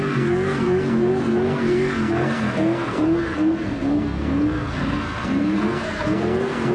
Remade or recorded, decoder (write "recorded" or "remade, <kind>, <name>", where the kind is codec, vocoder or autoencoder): remade, codec, SNAC